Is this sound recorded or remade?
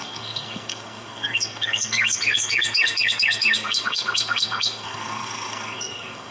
remade